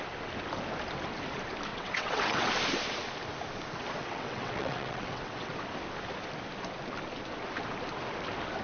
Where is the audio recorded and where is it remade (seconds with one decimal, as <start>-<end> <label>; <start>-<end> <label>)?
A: 0.0-1.7 recorded; 1.7-2.5 remade; 2.5-4.0 recorded; 4.0-5.5 remade; 5.5-8.6 recorded